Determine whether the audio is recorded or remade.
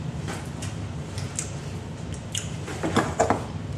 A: recorded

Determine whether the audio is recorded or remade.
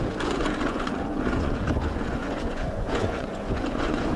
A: remade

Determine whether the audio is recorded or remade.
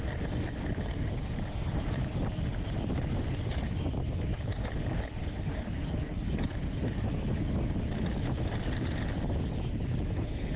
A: recorded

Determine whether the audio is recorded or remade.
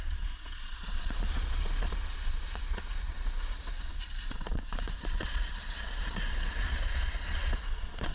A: remade